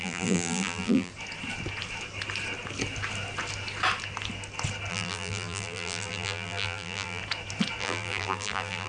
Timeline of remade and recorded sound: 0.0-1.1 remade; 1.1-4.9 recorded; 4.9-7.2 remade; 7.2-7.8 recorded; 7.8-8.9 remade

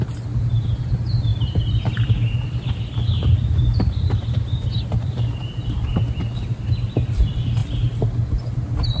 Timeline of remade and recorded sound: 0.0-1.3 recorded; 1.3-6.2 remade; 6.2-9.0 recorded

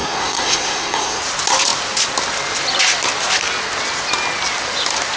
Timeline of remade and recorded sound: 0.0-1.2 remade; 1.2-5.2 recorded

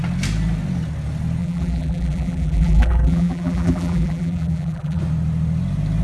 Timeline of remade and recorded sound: 0.0-1.4 recorded; 1.4-5.0 remade; 5.0-6.0 recorded

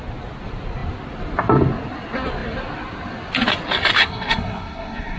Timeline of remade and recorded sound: 0.0-4.0 recorded; 4.0-5.2 remade

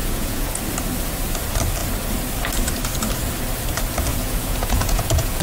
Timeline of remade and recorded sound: 0.0-0.6 remade; 0.6-4.1 recorded; 4.1-5.4 remade

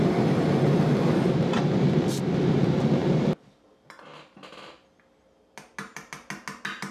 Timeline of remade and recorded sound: 0.0-6.9 recorded

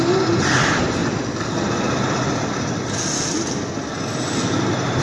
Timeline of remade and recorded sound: 0.0-5.0 recorded